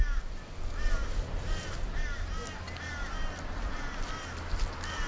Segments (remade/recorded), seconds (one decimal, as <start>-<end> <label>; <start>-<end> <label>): 0.0-5.1 recorded